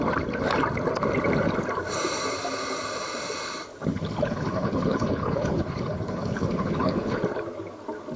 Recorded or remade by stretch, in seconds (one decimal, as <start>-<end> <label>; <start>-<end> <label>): 0.0-3.9 recorded; 3.9-7.2 remade; 7.2-8.2 recorded